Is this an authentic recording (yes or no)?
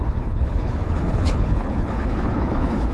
no